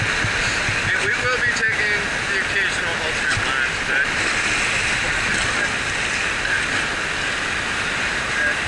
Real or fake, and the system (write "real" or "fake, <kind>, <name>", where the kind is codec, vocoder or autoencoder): real